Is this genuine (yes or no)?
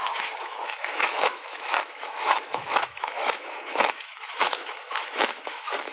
no